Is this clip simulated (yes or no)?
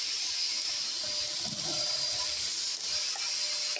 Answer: no